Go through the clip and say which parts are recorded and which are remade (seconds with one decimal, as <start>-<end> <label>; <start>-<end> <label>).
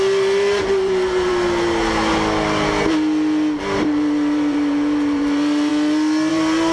0.0-1.3 remade; 1.3-3.8 recorded; 3.8-5.7 remade; 5.7-6.3 recorded; 6.3-6.7 remade